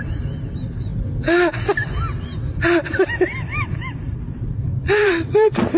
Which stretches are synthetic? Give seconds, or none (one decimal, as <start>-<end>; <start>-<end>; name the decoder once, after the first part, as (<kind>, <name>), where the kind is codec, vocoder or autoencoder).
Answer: 0.0-0.9 (vocoder, BigVGAN v2); 4.1-5.8